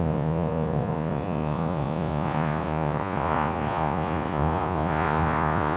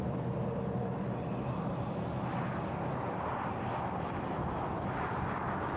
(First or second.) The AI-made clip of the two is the first